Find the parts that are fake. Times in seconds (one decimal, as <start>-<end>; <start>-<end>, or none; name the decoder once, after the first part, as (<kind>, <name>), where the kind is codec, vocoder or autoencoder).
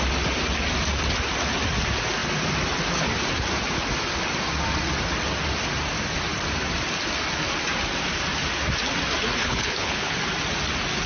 9.4-10.2 (codec, HILCodec)